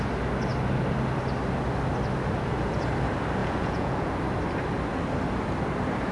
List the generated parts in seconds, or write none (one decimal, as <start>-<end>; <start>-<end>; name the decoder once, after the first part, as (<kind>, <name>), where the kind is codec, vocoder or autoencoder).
3.4-4.1 (vocoder, Vocos)